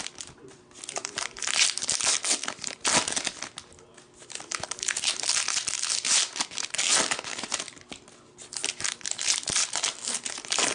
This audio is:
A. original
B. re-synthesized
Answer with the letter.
A